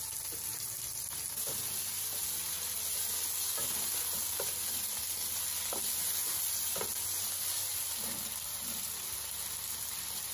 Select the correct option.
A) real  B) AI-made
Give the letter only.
A